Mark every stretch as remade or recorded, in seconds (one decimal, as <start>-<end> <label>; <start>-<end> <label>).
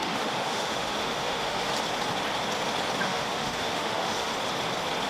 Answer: 0.0-1.7 remade; 1.7-3.0 recorded; 3.0-4.3 remade; 4.3-5.1 recorded